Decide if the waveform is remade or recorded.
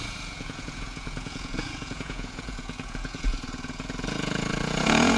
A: remade